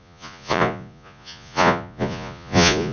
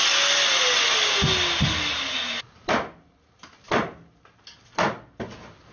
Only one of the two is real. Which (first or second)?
second